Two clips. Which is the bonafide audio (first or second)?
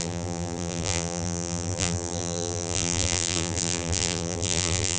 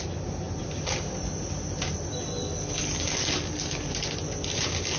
second